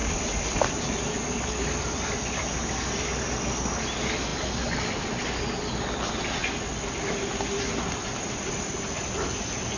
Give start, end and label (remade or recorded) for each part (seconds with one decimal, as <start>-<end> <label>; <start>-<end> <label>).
0.0-9.8 recorded